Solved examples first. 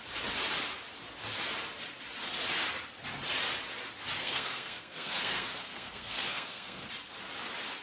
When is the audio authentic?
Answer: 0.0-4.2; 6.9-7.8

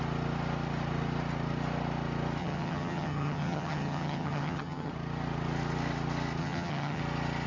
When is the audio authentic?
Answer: 0.0-2.4; 4.9-6.4; 7.0-7.5

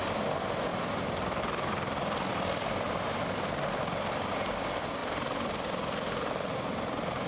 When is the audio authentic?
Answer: 0.0-0.7; 1.4-2.3; 4.6-5.0; 6.1-7.3

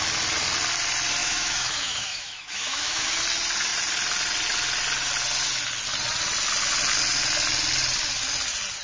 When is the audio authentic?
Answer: 0.0-1.2; 3.2-8.8